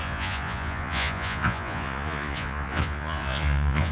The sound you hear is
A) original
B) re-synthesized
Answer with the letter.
B